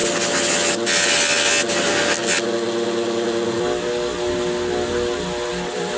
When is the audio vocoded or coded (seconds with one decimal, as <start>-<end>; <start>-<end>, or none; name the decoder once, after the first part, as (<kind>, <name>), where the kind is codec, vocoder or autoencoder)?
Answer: 1.7-2.2 (vocoder, BigVGAN v2); 5.5-6.0

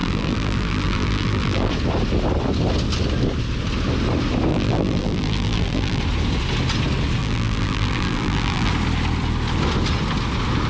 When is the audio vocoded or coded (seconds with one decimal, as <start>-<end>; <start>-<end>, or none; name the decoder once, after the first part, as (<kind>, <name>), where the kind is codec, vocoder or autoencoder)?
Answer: 0.0-1.7 (vocoder, BigVGAN v2); 4.5-6.0; 7.2-8.7

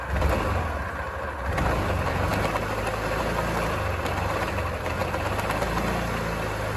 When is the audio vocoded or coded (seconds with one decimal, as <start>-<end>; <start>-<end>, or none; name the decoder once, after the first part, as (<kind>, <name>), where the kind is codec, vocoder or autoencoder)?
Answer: none

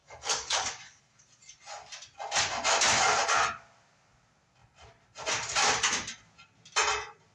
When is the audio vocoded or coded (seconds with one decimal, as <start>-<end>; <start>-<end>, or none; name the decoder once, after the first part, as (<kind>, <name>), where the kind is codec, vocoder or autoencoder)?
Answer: 0.0-1.0 (codec, DAC)

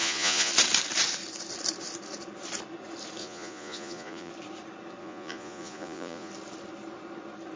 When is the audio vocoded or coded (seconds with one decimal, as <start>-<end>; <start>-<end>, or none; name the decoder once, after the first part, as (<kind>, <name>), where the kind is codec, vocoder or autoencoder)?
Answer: 0.0-0.5 (vocoder, Vocos); 3.2-4.3; 5.0-6.3

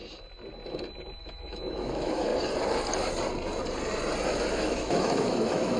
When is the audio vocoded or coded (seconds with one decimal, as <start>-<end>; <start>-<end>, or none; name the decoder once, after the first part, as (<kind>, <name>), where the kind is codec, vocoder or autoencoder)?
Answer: 1.2-2.3 (autoencoder, DAC-VAE); 4.5-5.8

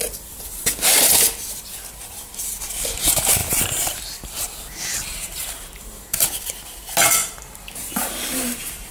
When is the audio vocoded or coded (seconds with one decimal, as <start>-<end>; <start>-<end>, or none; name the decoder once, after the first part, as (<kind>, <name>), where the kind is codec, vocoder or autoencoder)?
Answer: 3.4-4.3 (vocoder, BigVGAN v2); 4.9-6.2; 7.2-8.9

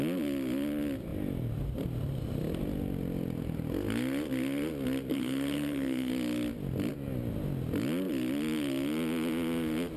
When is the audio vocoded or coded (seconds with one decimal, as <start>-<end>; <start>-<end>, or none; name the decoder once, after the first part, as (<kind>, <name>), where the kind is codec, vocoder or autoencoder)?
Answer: 5.1-6.1 (codec, SNAC)